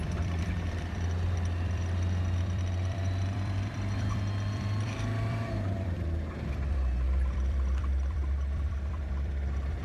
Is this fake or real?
fake